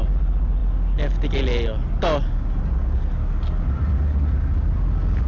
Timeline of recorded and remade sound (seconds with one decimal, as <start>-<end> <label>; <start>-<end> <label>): 0.0-5.3 recorded

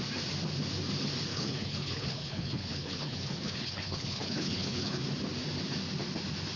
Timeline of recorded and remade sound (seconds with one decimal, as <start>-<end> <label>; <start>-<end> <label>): 0.0-1.3 recorded; 1.3-5.0 remade; 5.0-6.6 recorded

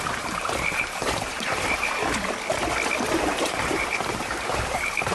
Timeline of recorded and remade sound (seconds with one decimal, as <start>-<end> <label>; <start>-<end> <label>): 0.0-2.0 remade; 2.0-3.2 recorded; 3.2-5.1 remade